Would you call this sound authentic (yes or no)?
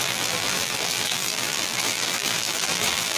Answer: no